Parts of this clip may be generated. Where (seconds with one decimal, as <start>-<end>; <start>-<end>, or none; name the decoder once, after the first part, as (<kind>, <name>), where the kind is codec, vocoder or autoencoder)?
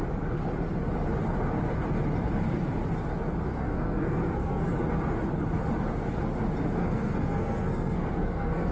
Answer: 3.5-4.6 (codec, SNAC); 6.8-8.7